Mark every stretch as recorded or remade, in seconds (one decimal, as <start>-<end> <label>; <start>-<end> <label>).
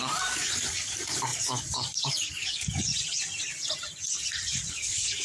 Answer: 0.0-2.9 remade; 2.9-4.7 recorded; 4.7-5.2 remade